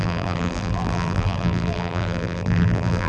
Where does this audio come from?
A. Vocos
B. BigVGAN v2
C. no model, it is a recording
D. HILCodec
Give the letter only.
B